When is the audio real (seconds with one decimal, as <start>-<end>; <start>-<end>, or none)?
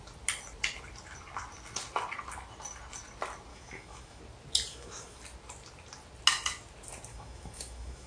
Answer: 0.0-3.5; 4.2-4.7; 5.2-7.1